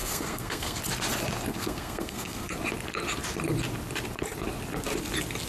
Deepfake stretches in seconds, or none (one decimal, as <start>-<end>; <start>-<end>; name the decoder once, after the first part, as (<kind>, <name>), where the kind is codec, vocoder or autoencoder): 0.0-0.8 (codec, SNAC); 1.5-2.5